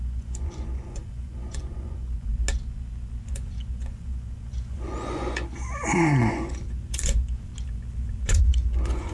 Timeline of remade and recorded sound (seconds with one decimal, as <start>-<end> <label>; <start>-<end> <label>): 0.0-2.3 remade; 2.3-3.3 recorded; 3.3-7.5 remade; 7.5-8.2 recorded; 8.2-9.1 remade